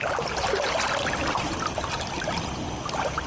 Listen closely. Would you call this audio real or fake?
real